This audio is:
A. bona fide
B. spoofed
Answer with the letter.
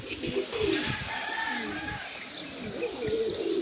A